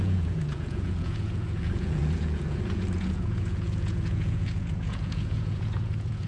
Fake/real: fake